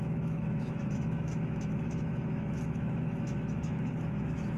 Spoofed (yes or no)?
yes